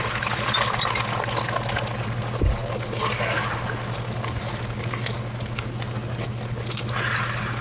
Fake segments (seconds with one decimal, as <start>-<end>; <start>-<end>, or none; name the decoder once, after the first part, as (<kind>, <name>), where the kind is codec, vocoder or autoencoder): none